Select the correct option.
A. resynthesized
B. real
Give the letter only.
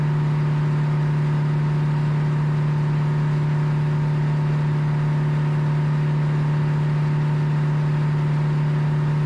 B